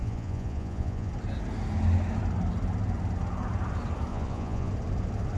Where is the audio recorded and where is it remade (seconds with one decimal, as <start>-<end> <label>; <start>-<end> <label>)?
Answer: 0.0-1.1 remade; 1.1-4.1 recorded; 4.1-4.7 remade; 4.7-5.4 recorded